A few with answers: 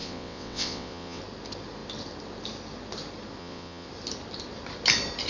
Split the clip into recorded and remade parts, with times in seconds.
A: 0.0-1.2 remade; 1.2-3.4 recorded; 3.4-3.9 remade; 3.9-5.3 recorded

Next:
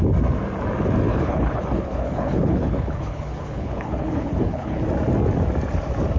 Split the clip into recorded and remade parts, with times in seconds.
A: 0.0-1.1 recorded; 1.1-4.8 remade; 4.8-6.2 recorded

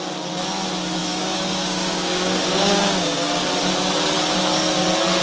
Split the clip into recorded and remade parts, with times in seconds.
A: 0.0-1.0 recorded; 1.0-3.4 remade; 3.4-5.2 recorded

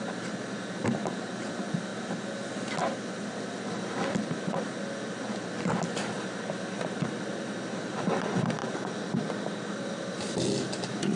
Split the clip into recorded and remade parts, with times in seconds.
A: 0.0-11.2 recorded